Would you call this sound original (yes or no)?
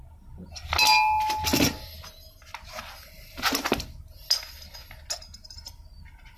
yes